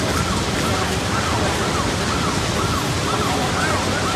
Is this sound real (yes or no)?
yes